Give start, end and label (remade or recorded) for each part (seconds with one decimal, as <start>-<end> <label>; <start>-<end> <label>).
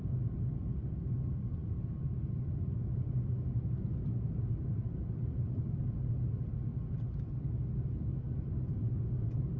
0.0-9.6 recorded